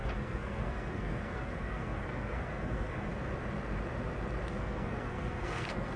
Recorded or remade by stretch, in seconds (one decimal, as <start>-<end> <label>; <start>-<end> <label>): 0.0-3.1 remade; 3.1-4.5 recorded; 4.5-6.0 remade